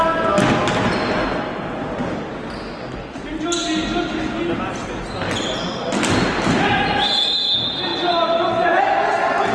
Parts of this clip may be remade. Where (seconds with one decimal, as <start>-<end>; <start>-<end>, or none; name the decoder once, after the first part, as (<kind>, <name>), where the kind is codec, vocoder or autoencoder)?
none